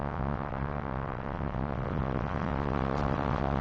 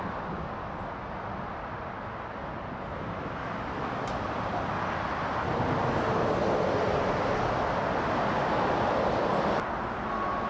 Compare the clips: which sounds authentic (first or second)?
second